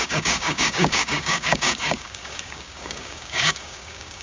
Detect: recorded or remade remade